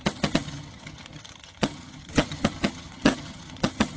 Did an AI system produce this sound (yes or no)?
yes